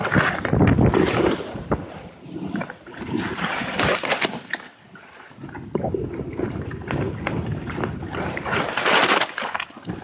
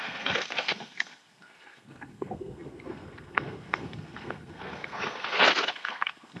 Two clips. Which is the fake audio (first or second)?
second